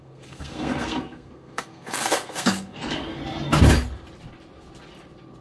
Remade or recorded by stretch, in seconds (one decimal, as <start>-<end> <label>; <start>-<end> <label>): 0.0-3.2 remade; 3.2-5.4 recorded